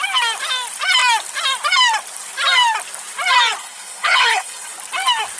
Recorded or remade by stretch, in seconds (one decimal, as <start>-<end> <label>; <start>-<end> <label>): 0.0-3.6 recorded; 3.6-4.7 remade; 4.7-5.4 recorded

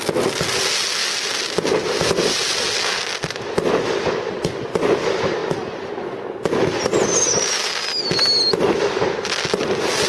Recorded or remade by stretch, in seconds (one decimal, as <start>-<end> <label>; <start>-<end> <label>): 0.0-10.1 recorded

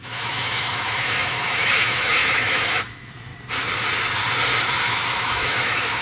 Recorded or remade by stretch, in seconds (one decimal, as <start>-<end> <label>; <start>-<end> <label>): 0.0-3.3 remade; 3.3-4.6 recorded; 4.6-6.0 remade

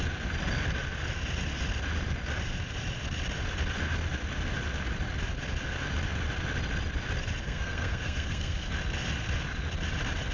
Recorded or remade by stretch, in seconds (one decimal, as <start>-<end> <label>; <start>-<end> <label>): 0.0-7.4 recorded; 7.4-8.7 remade; 8.7-10.3 recorded

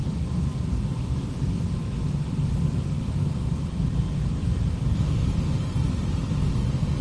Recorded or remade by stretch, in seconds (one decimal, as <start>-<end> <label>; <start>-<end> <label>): 0.0-3.9 remade; 3.9-4.4 recorded; 4.4-6.5 remade; 6.5-7.0 recorded

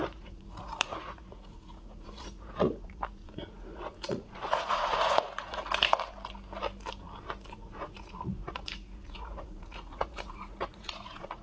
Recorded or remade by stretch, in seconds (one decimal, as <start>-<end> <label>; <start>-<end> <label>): 0.0-5.6 remade; 5.6-7.5 recorded; 7.5-11.4 remade

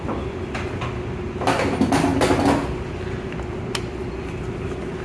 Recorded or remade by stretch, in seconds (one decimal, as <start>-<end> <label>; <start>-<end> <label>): 0.0-5.0 recorded

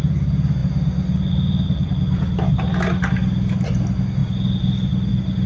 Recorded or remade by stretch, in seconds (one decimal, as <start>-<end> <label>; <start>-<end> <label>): 0.0-5.5 recorded